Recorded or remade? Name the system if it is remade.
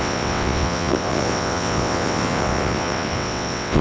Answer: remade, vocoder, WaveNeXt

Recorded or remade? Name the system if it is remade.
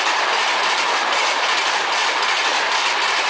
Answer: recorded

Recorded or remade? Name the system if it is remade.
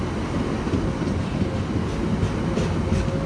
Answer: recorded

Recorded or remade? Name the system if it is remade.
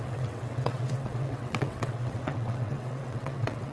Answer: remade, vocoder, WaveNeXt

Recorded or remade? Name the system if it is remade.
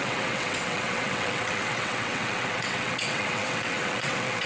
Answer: remade, vocoder, WaveNeXt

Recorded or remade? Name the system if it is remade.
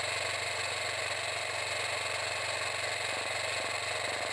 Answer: recorded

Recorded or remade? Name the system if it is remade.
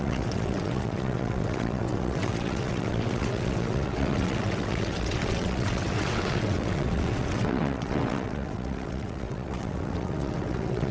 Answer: remade, vocoder, WaveNeXt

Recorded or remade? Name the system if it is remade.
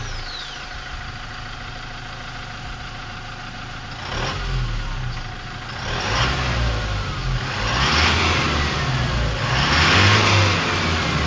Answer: recorded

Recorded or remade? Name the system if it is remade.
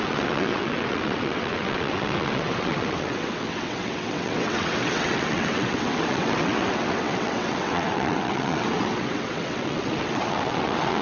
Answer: remade, vocoder, WaveNeXt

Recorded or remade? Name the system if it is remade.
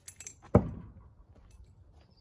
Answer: recorded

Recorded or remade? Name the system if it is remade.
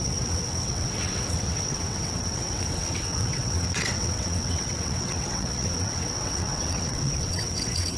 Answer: remade, vocoder, WaveNeXt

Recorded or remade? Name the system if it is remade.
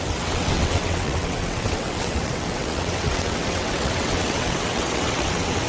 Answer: remade, vocoder, WaveNeXt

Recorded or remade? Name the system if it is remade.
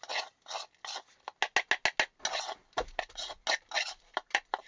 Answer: recorded